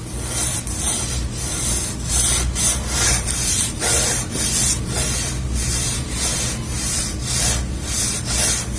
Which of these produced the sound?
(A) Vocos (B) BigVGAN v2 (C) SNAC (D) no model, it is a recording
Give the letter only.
D